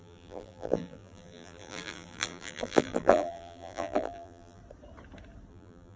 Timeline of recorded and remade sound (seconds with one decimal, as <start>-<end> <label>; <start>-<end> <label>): 0.0-4.6 remade; 4.6-5.5 recorded; 5.5-6.0 remade